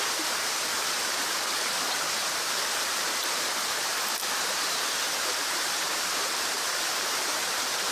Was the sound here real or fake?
fake